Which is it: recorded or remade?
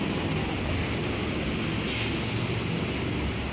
recorded